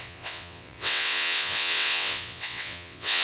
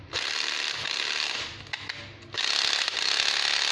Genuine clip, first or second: second